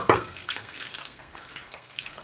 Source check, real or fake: fake